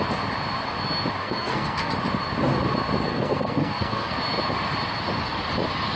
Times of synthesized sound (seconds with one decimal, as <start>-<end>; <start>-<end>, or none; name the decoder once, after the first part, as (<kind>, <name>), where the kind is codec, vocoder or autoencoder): 1.2-1.9 (codec, SNAC); 3.1-4.2